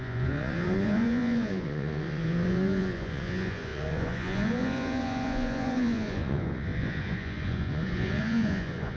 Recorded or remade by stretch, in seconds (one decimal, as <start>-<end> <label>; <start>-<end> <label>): 0.0-9.0 remade